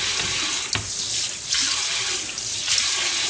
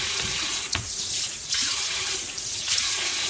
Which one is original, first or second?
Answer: first